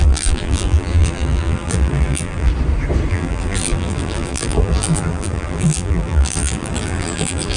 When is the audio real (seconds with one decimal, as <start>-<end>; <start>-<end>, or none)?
2.5-3.1